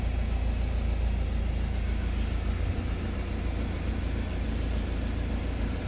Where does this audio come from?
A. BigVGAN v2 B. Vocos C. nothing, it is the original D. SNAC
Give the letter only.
C